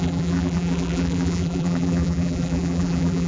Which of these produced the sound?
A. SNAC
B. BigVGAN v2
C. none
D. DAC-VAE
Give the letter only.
B